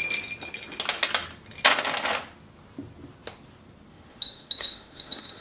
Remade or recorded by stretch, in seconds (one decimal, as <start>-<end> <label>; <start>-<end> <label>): 0.0-3.9 recorded; 3.9-5.4 remade